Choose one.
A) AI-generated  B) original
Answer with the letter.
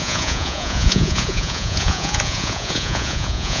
A